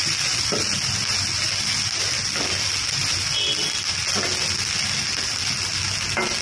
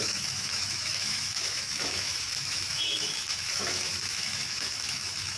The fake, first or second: second